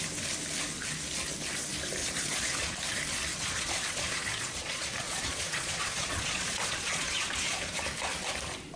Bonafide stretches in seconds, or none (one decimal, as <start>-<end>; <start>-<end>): 0.0-2.0; 2.8-3.3; 7.8-8.8